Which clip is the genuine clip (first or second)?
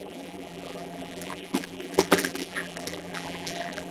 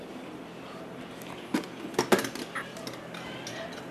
second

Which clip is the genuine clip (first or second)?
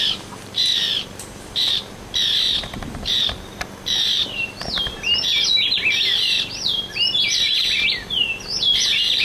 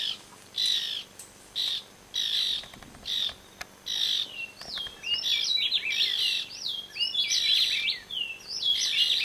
second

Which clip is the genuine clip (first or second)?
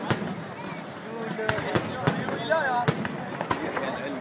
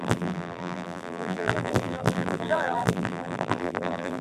first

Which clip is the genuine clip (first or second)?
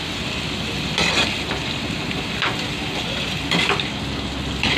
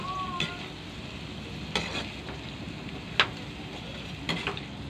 second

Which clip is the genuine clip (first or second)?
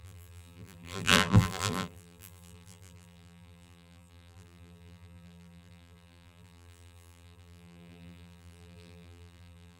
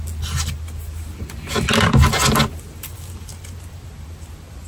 second